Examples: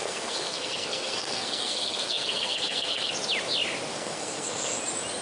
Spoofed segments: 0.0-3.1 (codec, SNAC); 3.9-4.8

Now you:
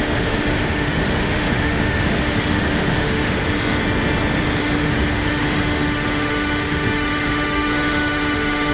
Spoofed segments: 0.0-3.4 (autoencoder, DAC-VAE); 4.6-8.7